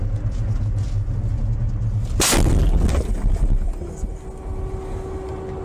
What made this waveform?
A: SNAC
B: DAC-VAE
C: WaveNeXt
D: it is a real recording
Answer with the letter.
D